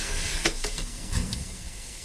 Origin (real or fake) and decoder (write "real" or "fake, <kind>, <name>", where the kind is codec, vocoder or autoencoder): fake, codec, SNAC